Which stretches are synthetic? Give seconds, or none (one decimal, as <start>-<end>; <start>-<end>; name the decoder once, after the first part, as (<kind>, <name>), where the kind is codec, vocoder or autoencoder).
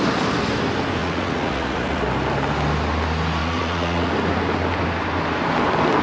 1.0-2.0 (vocoder, Vocos); 3.4-4.1